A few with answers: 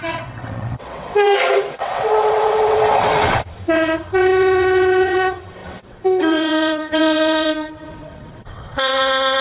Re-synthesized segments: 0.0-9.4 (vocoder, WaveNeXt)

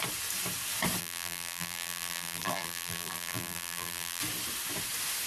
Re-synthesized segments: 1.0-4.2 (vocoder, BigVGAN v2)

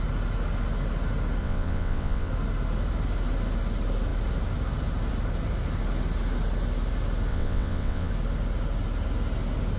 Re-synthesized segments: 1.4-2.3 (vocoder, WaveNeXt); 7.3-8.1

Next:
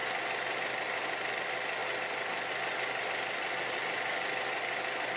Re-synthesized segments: none

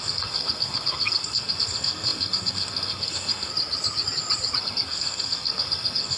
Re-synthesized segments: 0.0-3.5 (codec, SNAC); 4.6-6.2